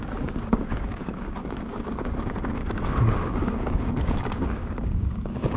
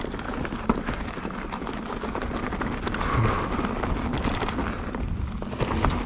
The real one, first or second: second